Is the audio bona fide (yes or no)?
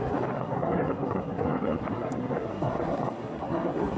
no